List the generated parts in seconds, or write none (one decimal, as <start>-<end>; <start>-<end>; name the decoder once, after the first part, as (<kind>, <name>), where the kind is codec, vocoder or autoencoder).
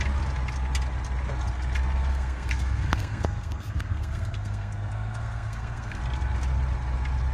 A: 2.1-6.0 (codec, SNAC)